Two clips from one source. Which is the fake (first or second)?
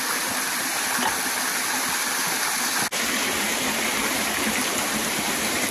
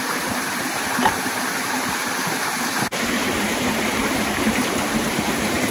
second